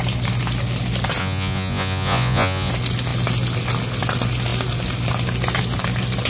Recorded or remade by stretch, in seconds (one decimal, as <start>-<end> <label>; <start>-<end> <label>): 0.0-1.2 recorded; 1.2-2.7 remade; 2.7-6.3 recorded